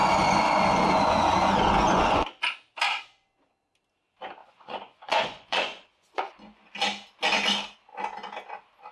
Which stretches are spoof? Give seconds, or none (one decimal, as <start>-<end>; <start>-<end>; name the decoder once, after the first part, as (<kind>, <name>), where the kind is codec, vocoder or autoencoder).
0.0-2.4 (vocoder, Vocos); 4.4-6.7